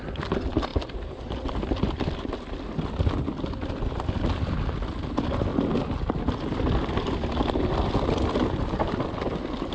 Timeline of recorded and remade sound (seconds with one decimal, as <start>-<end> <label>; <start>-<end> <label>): 0.0-9.7 recorded